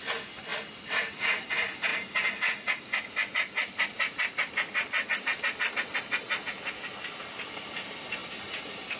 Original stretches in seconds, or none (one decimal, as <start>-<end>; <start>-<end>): 0.0-9.0